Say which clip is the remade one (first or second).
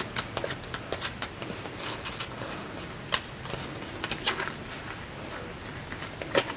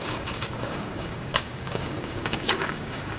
second